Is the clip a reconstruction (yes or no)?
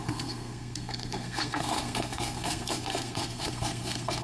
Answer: yes